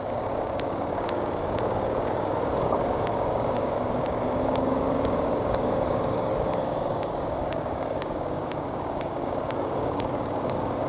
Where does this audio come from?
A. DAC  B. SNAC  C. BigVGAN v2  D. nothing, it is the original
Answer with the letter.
A